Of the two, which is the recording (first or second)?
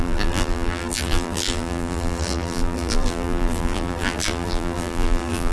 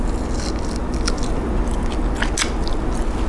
second